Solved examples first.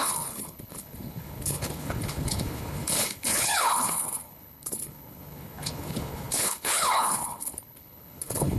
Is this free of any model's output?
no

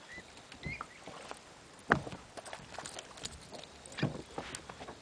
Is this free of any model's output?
yes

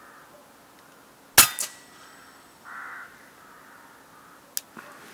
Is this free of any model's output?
yes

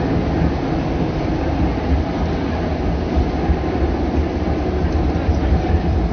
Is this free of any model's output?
yes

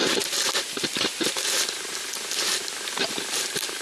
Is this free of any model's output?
no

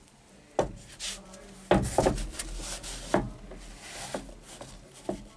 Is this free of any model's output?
yes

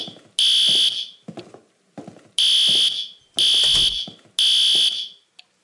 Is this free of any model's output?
yes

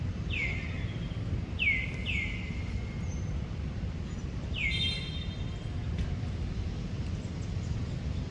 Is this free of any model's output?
yes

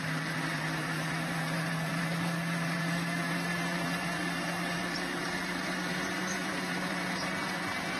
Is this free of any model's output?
no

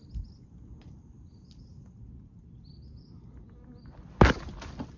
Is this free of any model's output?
yes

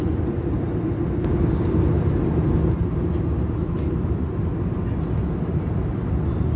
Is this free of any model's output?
yes